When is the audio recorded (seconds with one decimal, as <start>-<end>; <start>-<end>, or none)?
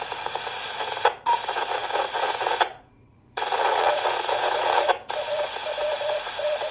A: none